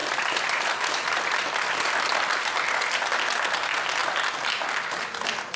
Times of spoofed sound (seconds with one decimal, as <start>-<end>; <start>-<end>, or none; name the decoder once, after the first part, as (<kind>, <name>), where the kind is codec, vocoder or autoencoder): 0.0-3.4 (vocoder, BigVGAN v2)